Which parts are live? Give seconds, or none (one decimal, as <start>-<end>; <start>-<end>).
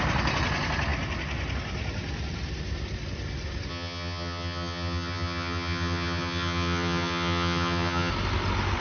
0.0-3.7; 8.1-8.8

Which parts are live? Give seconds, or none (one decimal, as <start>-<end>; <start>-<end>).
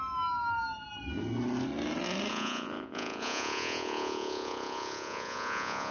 0.0-2.3